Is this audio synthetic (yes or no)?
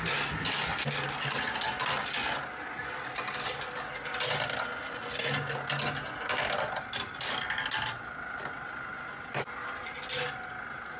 no